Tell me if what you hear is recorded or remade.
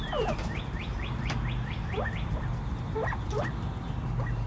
recorded